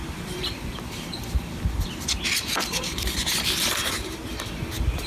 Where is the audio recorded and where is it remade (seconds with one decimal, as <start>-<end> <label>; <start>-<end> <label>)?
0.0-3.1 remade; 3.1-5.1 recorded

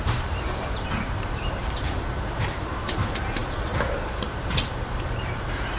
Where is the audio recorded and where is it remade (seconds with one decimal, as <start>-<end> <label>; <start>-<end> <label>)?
0.0-1.6 remade; 1.6-2.4 recorded; 2.4-5.8 remade

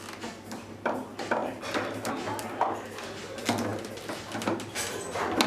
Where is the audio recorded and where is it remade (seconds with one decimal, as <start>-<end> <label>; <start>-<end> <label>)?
0.0-1.4 recorded; 1.4-2.1 remade; 2.1-5.5 recorded

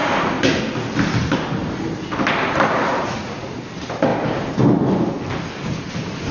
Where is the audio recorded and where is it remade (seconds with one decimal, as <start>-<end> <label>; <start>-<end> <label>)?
0.0-0.6 remade; 0.6-6.3 recorded